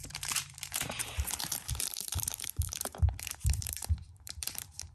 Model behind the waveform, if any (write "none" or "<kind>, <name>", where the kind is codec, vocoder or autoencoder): vocoder, BigVGAN v2